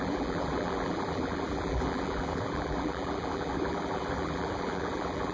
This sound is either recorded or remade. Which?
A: remade